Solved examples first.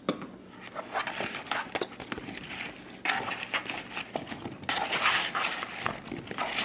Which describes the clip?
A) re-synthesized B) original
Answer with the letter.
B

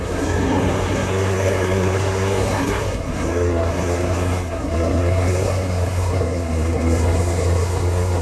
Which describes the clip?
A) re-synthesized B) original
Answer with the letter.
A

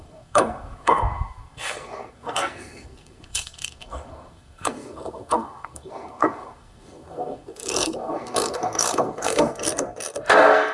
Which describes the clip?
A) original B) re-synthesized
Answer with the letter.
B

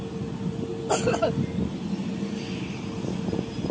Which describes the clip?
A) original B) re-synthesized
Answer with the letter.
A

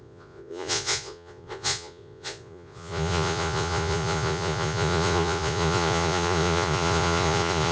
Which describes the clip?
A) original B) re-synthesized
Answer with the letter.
B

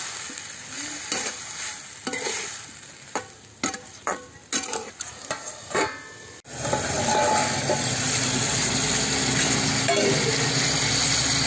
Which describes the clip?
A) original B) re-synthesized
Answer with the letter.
A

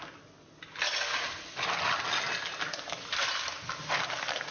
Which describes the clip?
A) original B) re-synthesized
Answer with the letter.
A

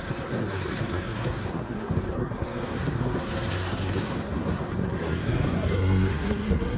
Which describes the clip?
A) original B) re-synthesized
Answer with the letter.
B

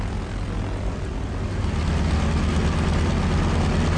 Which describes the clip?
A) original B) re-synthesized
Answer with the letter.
A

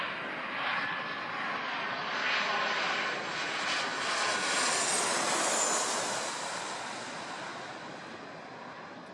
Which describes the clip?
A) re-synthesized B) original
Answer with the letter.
B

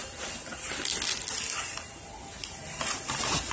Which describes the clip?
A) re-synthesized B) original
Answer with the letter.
B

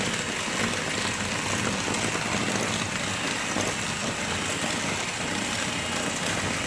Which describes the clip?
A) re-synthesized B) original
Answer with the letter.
B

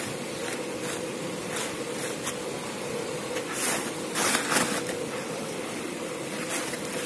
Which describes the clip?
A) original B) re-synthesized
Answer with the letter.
A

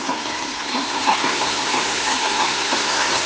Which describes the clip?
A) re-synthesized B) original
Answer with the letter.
A